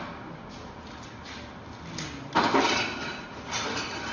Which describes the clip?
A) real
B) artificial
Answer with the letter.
A